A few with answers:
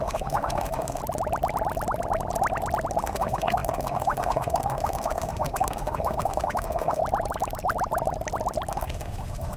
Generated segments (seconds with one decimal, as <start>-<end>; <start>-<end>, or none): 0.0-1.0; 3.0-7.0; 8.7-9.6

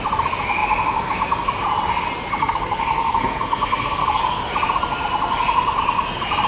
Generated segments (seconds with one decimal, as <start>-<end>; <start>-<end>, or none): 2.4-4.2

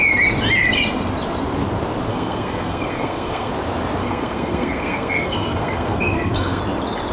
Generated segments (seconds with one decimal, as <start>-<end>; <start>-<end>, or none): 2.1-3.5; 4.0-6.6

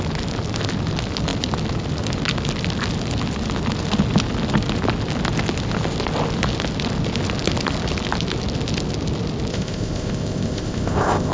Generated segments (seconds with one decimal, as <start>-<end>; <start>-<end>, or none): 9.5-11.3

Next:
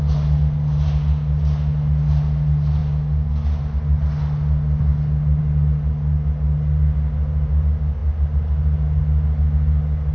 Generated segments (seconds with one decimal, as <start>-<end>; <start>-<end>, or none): none

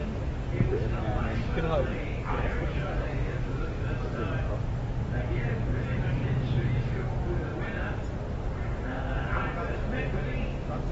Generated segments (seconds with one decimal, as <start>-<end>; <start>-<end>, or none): 2.1-3.7

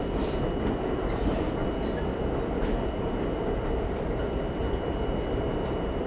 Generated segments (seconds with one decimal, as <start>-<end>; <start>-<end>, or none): none